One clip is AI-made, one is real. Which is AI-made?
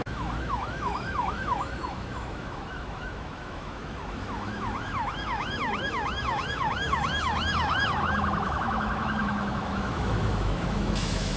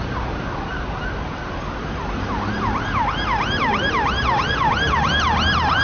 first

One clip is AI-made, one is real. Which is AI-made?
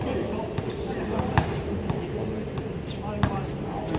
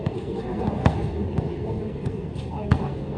second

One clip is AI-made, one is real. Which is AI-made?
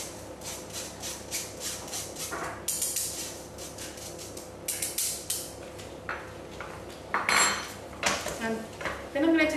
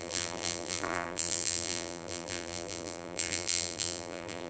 second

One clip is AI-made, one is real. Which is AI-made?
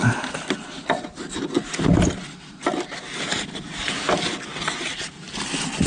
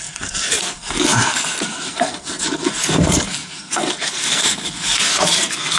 second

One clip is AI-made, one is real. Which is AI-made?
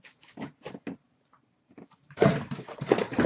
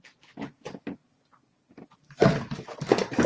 first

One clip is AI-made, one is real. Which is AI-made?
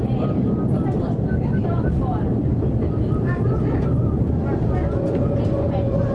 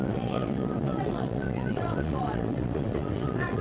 second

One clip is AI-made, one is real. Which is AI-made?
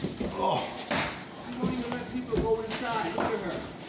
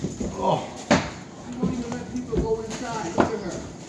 second